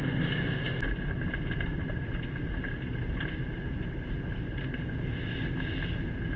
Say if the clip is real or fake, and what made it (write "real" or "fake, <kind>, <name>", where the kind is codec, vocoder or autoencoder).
real